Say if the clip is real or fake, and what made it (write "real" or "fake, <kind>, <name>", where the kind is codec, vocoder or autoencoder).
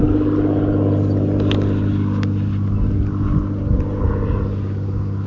real